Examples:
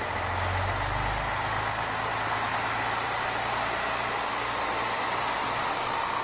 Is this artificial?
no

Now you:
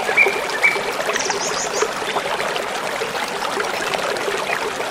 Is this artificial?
no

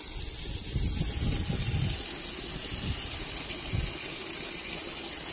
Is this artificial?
no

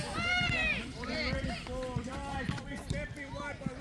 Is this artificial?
yes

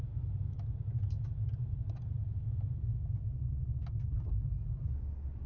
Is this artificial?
no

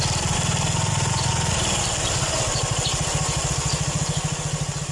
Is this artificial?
no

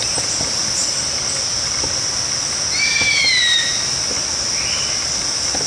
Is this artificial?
no